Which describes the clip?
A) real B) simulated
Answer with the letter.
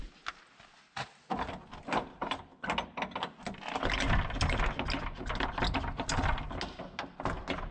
A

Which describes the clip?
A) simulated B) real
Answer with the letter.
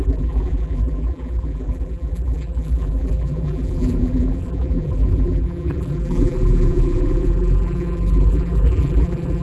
A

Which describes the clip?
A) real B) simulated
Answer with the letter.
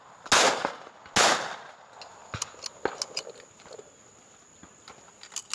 A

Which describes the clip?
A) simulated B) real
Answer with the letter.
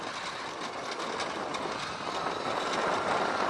B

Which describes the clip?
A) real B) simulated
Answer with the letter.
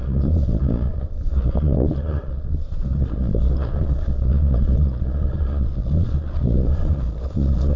B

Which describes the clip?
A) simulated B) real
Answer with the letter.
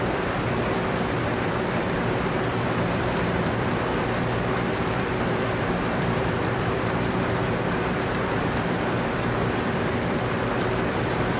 A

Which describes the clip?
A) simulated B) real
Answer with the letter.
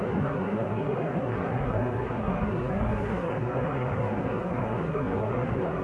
A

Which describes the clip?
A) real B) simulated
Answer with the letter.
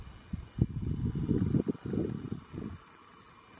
A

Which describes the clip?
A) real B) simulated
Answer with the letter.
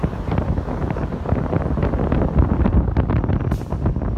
A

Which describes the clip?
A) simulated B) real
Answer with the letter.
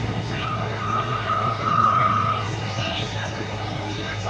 A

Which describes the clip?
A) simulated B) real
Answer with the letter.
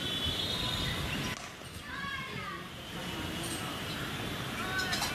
B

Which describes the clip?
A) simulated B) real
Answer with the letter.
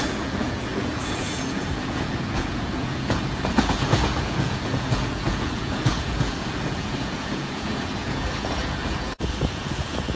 A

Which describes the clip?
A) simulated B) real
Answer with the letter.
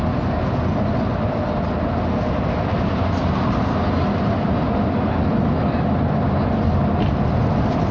B